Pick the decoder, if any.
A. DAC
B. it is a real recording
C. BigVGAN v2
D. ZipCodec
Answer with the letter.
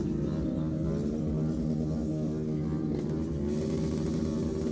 B